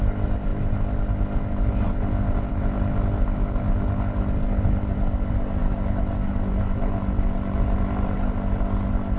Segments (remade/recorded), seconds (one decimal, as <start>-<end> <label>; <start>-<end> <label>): 0.0-9.2 recorded